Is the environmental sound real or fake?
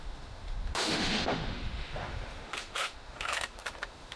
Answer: fake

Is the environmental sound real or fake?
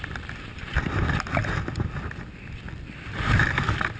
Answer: fake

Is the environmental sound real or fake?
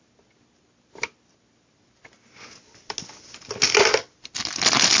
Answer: real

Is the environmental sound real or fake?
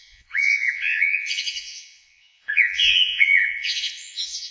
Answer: fake